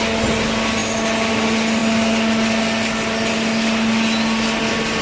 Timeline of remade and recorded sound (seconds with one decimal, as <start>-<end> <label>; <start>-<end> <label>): 0.0-5.0 recorded